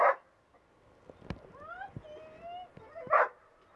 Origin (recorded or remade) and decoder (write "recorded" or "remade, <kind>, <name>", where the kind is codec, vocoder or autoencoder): recorded